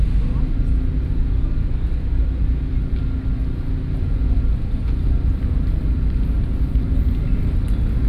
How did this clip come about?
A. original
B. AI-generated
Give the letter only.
A